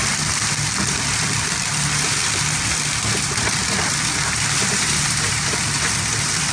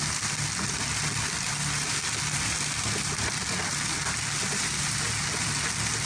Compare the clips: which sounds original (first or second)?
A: second